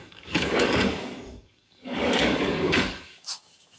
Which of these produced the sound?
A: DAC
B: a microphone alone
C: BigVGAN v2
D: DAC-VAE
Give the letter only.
A